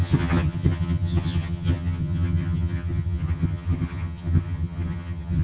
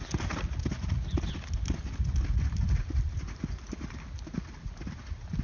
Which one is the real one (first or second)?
second